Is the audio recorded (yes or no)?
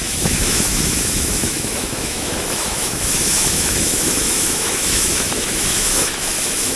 no